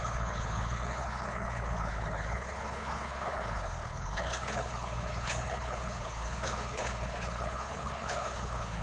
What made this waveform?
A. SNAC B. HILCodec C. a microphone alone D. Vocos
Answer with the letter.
B